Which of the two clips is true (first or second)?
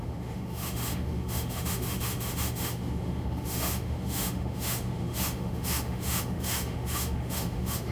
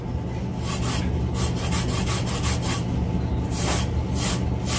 second